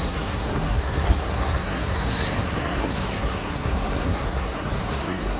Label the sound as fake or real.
fake